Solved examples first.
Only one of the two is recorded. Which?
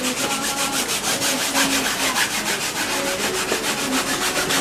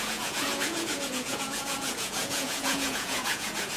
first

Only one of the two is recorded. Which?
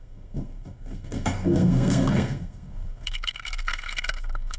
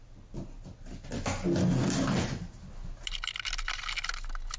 second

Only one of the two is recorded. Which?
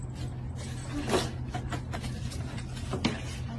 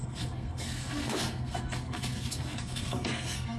first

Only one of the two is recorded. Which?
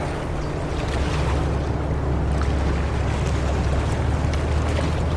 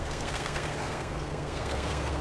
first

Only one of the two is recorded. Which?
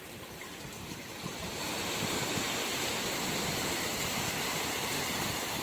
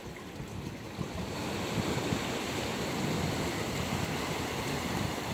second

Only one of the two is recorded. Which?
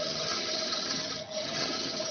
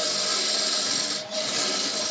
second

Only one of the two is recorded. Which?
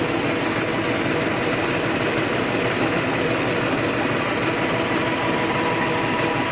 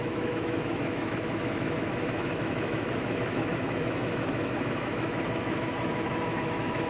first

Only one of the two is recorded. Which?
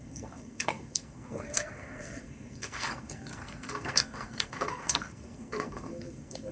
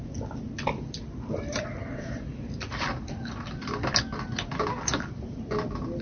second